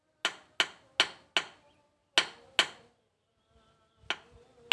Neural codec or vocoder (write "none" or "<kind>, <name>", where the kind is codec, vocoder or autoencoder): none